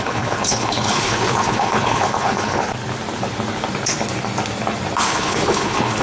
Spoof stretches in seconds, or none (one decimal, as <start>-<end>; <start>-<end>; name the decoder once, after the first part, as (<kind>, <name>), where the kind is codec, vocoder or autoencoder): 0.0-2.6 (codec, HILCodec); 5.0-6.0